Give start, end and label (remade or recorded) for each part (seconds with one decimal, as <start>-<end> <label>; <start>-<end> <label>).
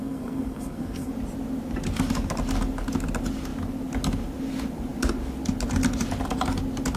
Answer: 0.0-1.1 remade; 1.1-7.0 recorded